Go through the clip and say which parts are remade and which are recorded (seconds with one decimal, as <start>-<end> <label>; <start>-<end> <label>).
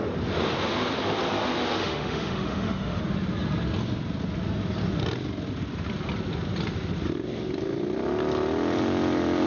0.0-1.8 recorded; 1.8-3.0 remade; 3.0-9.5 recorded